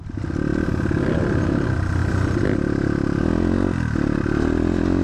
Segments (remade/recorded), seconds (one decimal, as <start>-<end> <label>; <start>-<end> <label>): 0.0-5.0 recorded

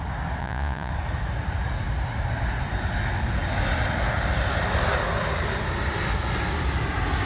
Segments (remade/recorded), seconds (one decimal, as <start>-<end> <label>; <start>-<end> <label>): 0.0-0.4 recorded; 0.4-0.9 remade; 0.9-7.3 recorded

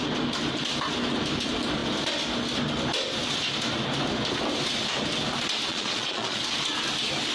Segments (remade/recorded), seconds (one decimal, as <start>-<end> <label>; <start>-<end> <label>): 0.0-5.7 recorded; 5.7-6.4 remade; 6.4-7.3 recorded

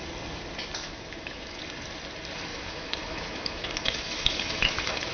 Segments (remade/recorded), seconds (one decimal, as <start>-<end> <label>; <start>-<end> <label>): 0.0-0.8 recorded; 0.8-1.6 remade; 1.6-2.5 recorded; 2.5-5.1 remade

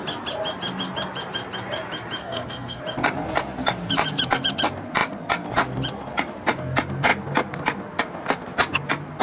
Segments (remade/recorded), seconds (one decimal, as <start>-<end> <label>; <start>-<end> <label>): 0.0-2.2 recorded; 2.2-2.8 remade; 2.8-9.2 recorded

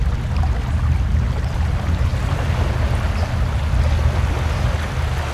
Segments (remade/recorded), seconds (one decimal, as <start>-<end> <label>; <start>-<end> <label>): 0.0-5.3 recorded